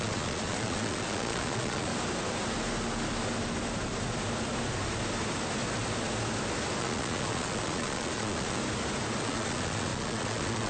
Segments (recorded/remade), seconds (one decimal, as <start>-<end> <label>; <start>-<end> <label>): 0.0-1.9 remade; 1.9-6.8 recorded; 6.8-8.6 remade; 8.6-9.2 recorded; 9.2-10.7 remade